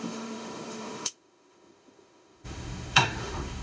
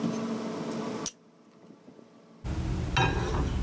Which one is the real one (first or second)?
second